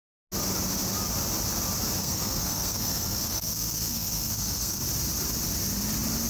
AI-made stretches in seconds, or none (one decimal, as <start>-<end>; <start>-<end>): 2.0-4.8

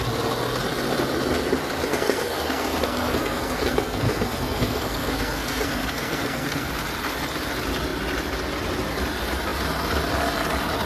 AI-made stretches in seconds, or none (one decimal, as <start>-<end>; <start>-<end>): 1.9-6.7

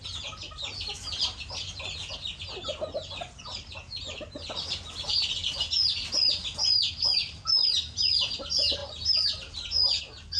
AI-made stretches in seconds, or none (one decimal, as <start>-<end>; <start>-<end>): none

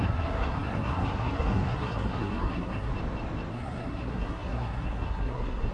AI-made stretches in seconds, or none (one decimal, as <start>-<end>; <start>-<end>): 0.0-2.9; 3.5-5.7